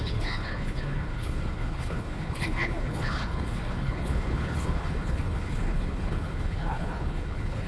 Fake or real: fake